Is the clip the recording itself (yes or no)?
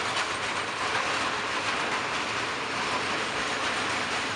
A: yes